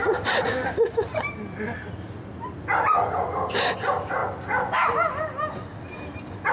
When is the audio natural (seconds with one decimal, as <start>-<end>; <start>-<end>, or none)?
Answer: 0.0-6.5